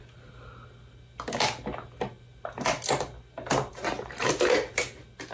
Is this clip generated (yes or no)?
no